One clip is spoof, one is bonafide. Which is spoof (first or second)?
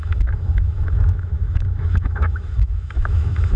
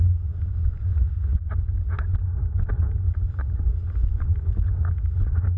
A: first